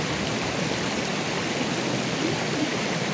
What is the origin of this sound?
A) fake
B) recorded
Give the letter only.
B